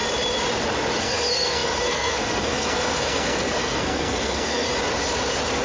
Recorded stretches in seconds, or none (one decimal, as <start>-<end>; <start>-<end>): 0.0-1.0; 4.7-5.6